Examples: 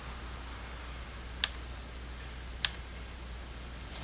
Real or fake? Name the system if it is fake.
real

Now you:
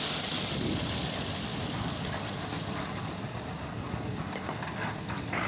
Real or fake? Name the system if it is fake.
real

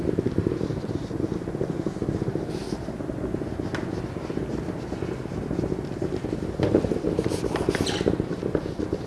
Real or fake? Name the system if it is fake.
real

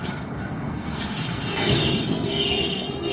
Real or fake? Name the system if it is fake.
fake, codec, SNAC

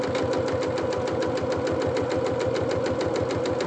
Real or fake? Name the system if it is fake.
real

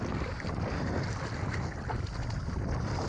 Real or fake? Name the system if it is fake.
real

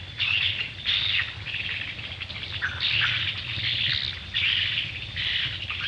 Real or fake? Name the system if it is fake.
real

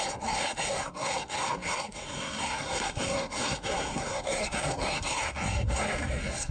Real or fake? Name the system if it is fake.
fake, codec, SNAC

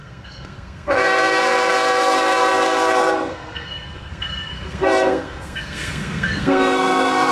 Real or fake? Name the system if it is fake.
fake, codec, SNAC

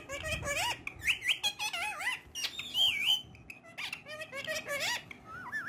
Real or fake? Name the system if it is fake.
real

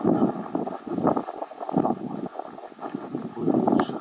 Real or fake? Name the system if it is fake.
real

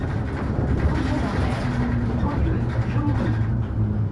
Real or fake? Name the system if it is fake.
real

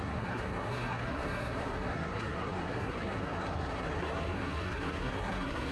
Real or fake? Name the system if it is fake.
fake, codec, SNAC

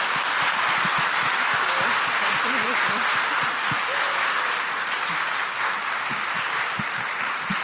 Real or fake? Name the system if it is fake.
real